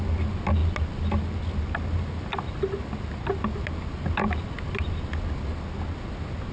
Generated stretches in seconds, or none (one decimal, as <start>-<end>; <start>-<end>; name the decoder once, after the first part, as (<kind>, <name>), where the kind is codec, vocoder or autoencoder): none